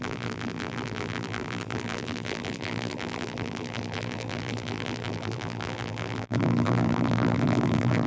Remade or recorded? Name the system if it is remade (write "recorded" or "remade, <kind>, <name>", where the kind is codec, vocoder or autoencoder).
remade, vocoder, BigVGAN v2